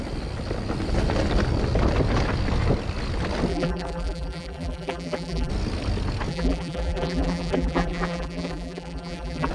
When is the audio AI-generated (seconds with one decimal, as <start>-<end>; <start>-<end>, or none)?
3.5-5.5; 6.3-9.5